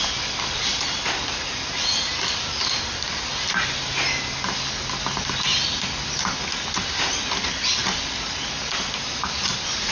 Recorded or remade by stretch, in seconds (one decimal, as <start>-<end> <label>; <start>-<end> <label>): 0.0-9.9 recorded